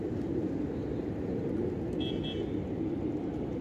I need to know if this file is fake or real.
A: real